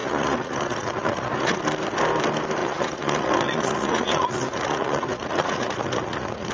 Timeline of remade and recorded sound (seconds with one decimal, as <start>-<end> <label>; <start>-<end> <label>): 0.0-1.6 remade; 1.6-2.6 recorded; 2.6-6.5 remade